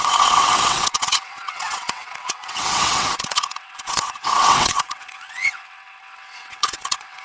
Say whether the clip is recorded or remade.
remade